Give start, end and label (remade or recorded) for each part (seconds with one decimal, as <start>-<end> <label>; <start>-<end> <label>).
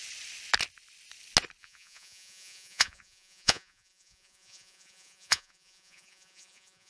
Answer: 0.0-1.6 recorded; 1.6-6.9 remade